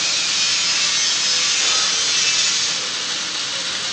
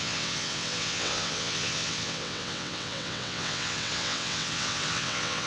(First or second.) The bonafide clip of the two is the first